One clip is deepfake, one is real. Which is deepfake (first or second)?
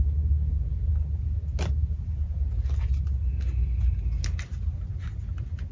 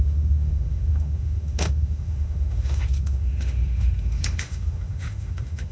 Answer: second